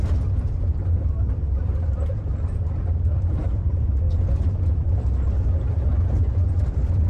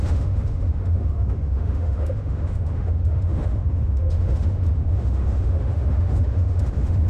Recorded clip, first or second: first